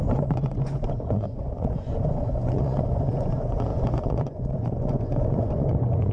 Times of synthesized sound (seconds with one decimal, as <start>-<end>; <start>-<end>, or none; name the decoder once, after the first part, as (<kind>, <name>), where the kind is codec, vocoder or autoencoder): 0.0-6.1 (vocoder, Vocos)